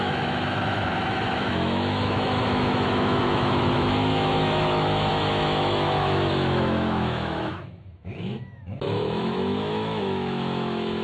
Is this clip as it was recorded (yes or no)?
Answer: no